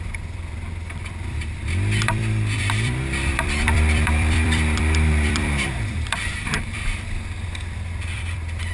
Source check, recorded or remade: remade